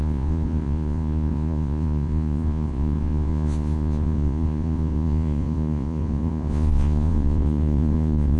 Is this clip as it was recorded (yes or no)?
no